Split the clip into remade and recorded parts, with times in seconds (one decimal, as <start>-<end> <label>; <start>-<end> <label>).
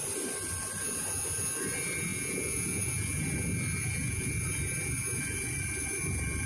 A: 0.0-2.1 recorded; 2.1-3.2 remade; 3.2-3.8 recorded; 3.8-4.3 remade; 4.3-6.5 recorded